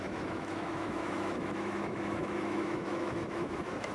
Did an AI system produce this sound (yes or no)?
yes